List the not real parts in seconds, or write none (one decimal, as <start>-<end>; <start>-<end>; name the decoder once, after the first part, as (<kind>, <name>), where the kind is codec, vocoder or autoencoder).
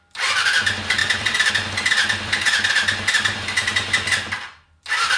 1.0-1.5 (vocoder, BigVGAN v2)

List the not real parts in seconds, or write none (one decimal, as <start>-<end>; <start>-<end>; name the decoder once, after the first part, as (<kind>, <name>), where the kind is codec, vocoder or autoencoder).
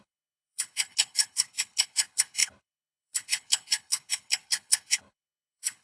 0.0-5.8 (codec, HILCodec)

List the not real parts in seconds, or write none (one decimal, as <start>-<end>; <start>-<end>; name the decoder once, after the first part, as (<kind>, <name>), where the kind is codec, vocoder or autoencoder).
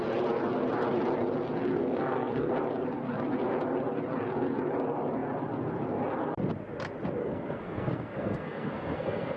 1.8-2.5 (codec, SNAC); 7.2-9.4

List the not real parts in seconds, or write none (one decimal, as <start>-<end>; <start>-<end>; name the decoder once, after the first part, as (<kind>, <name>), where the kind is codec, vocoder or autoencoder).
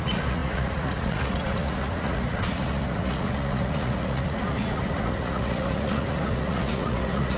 0.0-7.4 (vocoder, Vocos)